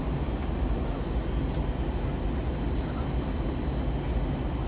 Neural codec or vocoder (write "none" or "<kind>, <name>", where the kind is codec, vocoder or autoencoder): none